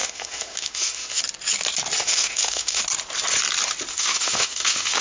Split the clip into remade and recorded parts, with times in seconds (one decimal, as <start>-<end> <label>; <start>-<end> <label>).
0.0-1.2 remade; 1.2-2.0 recorded; 2.0-2.8 remade; 2.8-3.9 recorded; 3.9-5.0 remade